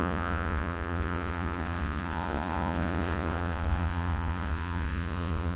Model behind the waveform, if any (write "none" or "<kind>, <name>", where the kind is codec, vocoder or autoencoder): vocoder, Vocos